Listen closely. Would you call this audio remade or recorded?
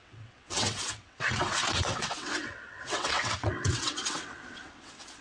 remade